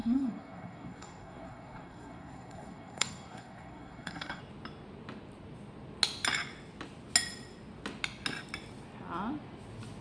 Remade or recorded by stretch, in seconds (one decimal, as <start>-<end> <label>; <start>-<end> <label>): 0.0-4.4 remade; 4.4-10.0 recorded

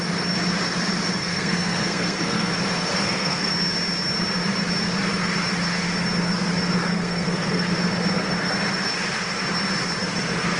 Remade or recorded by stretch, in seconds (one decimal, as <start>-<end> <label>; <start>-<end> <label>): 0.0-1.2 recorded; 1.2-2.5 remade; 2.5-2.9 recorded; 2.9-3.5 remade; 3.5-6.9 recorded; 6.9-7.6 remade; 7.6-10.6 recorded

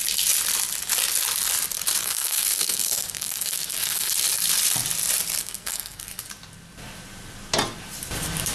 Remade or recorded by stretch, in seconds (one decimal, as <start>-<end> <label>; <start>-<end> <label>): 0.0-2.0 recorded; 2.0-4.1 remade; 4.1-5.4 recorded; 5.4-6.2 remade; 6.2-8.5 recorded

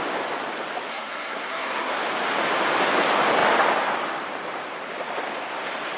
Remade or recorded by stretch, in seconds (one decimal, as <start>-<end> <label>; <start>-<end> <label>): 0.0-0.9 recorded; 0.9-1.9 remade; 1.9-6.0 recorded

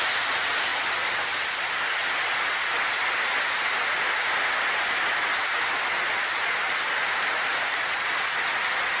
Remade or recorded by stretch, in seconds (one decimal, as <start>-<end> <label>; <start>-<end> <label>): 0.0-9.0 recorded

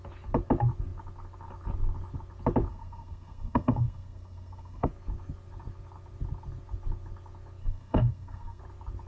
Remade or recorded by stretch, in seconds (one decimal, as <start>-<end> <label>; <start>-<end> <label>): 0.0-2.7 recorded; 2.7-4.9 remade; 4.9-7.6 recorded; 7.6-8.6 remade; 8.6-9.1 recorded

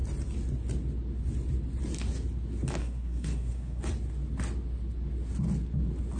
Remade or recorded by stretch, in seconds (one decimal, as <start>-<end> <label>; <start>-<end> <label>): 0.0-2.8 recorded; 2.8-3.8 remade; 3.8-6.2 recorded

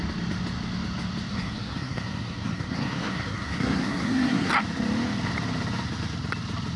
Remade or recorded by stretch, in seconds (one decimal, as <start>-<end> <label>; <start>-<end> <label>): 0.0-1.3 recorded; 1.3-4.5 remade; 4.5-6.8 recorded